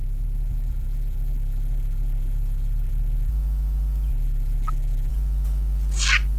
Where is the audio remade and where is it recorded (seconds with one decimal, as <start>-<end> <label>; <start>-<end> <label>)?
0.0-3.3 remade; 3.3-4.1 recorded; 4.1-5.1 remade; 5.1-6.4 recorded